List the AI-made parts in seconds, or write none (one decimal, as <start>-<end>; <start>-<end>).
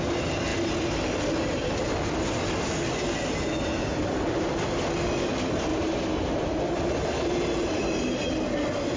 3.9-4.5; 5.7-6.6